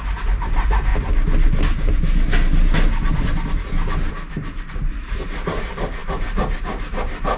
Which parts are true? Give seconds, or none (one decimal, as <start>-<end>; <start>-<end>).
0.9-4.1